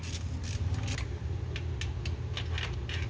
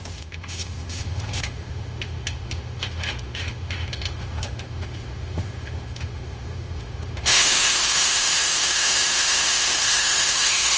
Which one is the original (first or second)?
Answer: first